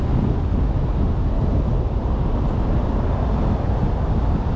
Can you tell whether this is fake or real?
real